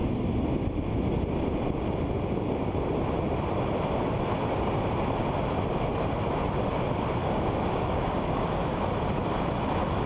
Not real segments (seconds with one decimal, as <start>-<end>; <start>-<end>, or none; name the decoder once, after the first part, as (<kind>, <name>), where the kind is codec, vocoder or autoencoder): 7.2-8.8 (codec, DAC)